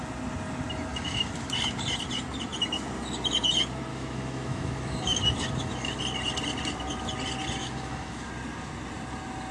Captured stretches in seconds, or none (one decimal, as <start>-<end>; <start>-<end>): 0.0-0.9; 1.5-3.9; 6.0-7.6; 8.3-9.5